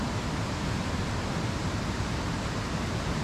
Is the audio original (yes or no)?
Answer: no